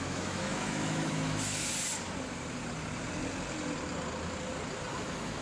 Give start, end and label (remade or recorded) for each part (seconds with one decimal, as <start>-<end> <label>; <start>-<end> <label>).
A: 0.0-1.7 remade; 1.7-4.9 recorded; 4.9-5.4 remade